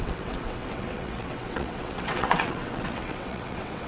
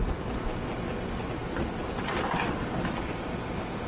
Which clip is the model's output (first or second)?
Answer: first